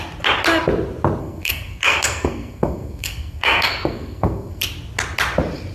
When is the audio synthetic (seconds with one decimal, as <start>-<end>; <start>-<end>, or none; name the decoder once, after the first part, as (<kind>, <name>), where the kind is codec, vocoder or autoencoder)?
1.2-4.6 (codec, SNAC)